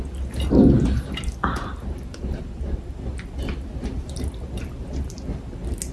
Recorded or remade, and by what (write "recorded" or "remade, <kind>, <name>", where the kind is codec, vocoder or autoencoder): recorded